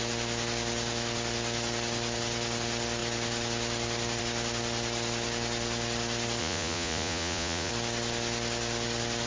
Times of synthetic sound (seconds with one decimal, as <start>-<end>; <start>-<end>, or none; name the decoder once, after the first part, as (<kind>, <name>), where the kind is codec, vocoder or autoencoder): 6.4-7.7 (vocoder, Vocos)